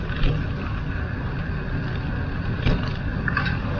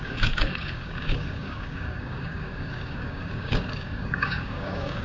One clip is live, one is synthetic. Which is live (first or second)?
first